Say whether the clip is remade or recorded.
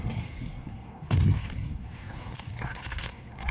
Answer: remade